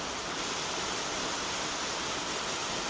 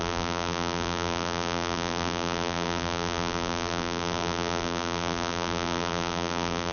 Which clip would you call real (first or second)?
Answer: first